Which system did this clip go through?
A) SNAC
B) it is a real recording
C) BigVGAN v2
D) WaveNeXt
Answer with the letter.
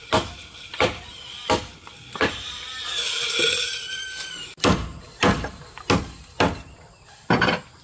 B